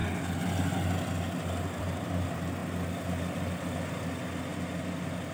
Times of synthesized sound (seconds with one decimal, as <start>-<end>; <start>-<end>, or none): 1.8-2.6